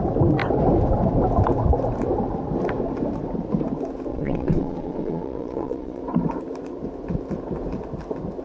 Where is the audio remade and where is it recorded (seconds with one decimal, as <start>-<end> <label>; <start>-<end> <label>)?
0.0-4.1 recorded; 4.1-6.0 remade; 6.0-8.4 recorded